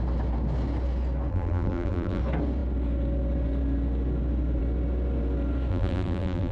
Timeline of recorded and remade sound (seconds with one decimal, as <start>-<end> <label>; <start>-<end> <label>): 0.0-1.3 recorded; 1.3-2.2 remade; 2.2-5.7 recorded; 5.7-6.5 remade